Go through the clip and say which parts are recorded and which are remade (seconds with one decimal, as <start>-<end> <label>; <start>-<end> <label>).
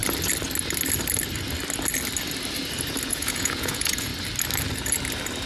0.0-3.1 recorded; 3.1-4.1 remade; 4.1-5.5 recorded